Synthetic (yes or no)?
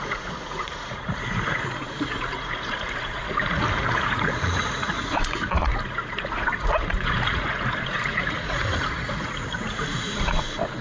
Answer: yes